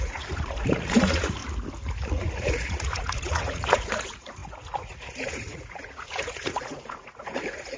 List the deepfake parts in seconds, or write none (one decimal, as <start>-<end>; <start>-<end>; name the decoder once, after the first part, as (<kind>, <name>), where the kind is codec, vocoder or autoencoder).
0.0-1.4 (vocoder, Vocos); 2.1-7.8